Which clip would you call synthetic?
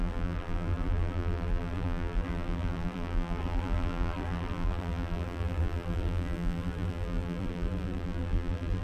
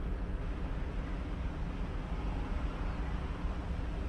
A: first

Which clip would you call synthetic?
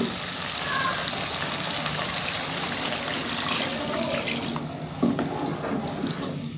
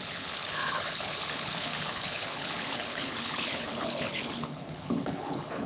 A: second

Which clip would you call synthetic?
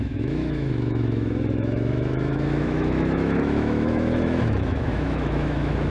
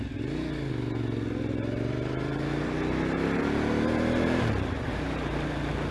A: first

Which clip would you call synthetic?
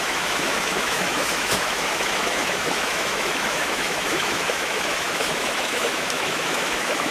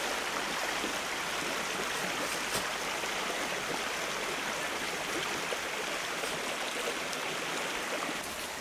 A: first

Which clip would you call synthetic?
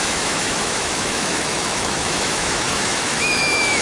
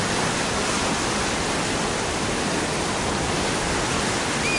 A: first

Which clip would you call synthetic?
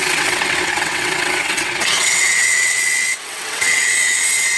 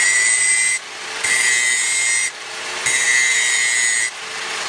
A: first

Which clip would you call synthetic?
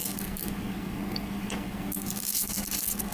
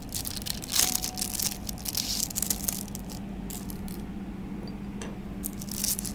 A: first